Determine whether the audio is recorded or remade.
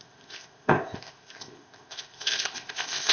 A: remade